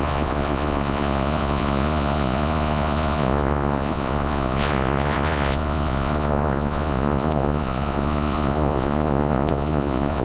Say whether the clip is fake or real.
fake